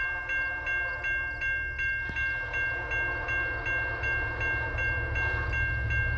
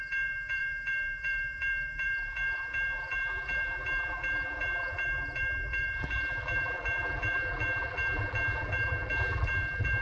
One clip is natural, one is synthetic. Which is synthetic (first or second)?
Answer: second